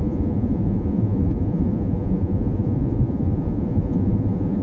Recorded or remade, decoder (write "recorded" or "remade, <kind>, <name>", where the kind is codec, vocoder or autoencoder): remade, vocoder, Vocos